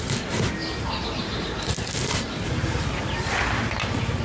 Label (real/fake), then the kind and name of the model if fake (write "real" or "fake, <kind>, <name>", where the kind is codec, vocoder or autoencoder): real